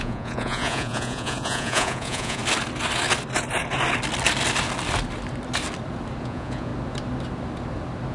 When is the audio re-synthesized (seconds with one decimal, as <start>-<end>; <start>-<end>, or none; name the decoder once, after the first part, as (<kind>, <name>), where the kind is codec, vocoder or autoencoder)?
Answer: 0.0-2.4 (vocoder, Vocos); 6.2-6.7